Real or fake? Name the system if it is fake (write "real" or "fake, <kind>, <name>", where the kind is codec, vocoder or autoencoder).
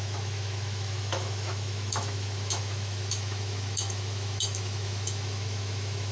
fake, autoencoder, DAC-VAE